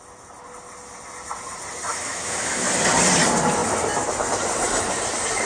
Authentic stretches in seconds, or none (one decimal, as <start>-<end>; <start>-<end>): 0.0-1.9; 2.7-5.5